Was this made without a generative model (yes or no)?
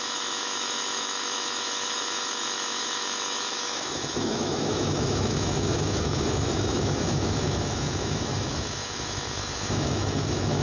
no